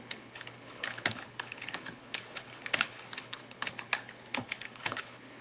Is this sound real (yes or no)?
no